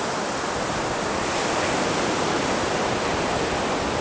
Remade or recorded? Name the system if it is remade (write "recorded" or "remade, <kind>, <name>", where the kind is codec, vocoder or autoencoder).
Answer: recorded